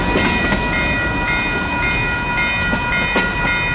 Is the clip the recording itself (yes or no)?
yes